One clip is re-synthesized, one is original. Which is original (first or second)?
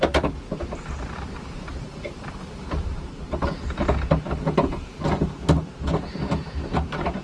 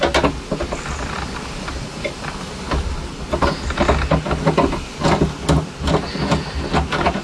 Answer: second